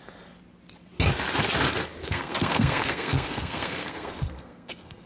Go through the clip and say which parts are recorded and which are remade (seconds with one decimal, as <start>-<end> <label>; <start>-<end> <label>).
0.0-2.0 recorded; 2.0-5.1 remade